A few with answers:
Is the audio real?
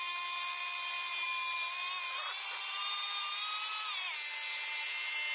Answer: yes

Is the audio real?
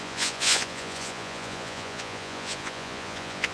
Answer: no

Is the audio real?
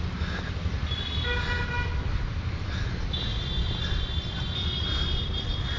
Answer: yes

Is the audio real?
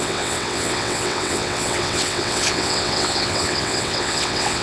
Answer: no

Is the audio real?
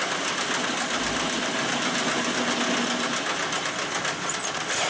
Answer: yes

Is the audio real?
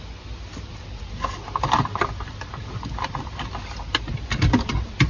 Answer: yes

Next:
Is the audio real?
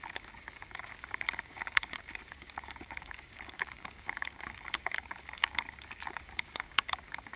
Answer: no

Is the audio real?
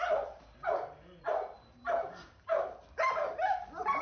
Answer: no